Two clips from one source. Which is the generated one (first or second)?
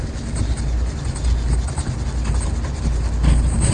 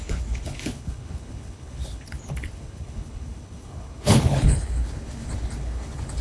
second